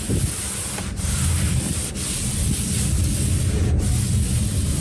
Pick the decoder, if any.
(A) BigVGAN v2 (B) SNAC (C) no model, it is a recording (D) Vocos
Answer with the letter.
C